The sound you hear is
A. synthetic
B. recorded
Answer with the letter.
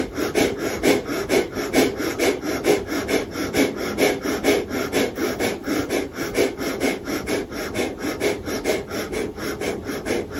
B